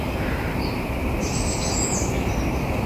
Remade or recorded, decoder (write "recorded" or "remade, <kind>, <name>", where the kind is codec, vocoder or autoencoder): recorded